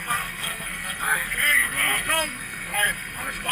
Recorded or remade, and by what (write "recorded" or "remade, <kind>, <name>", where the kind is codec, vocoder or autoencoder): remade, codec, SNAC